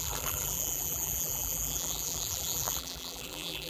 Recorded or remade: remade